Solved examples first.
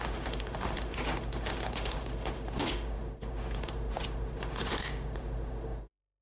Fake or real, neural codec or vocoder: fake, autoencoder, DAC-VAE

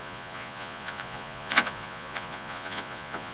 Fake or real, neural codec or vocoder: fake, vocoder, Vocos